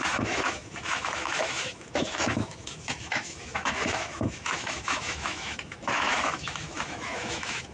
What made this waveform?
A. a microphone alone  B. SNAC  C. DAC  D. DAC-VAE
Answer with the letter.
D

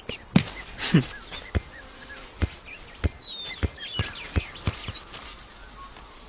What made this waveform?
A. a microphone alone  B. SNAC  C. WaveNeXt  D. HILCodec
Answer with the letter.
A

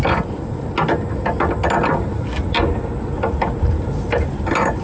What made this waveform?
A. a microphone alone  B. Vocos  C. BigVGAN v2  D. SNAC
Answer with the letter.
A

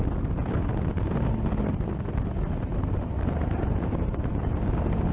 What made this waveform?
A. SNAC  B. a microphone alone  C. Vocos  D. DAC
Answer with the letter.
B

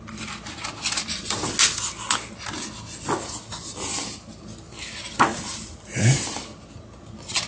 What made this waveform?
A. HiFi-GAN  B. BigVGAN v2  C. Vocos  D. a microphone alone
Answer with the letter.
D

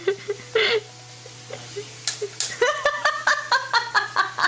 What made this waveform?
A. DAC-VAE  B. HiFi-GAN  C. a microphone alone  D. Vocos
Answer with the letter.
C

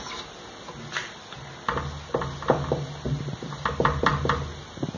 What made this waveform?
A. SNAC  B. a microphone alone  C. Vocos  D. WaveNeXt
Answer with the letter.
B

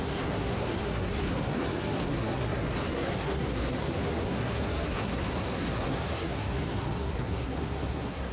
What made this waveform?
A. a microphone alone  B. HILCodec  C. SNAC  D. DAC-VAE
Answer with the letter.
C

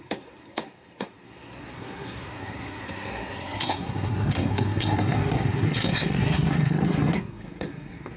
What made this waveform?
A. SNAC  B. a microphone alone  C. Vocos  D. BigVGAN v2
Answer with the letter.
A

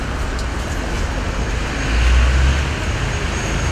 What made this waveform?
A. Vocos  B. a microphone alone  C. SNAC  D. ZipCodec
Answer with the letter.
B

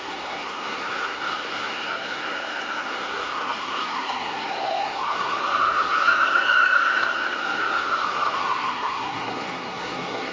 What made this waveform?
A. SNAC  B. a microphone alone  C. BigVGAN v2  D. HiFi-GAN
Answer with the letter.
A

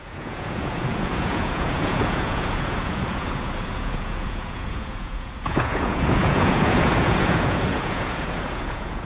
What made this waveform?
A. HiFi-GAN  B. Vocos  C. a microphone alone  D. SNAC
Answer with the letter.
B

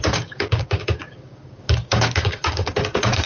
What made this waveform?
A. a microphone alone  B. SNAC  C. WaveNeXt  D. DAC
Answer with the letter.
D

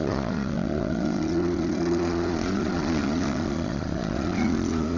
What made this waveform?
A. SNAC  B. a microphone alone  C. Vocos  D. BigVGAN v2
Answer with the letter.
C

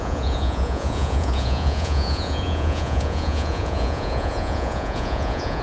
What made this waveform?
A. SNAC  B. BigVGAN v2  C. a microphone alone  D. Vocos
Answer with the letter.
D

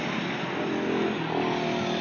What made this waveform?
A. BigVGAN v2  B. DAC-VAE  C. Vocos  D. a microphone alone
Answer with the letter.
D